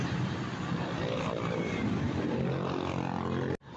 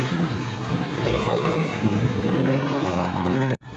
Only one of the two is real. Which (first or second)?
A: first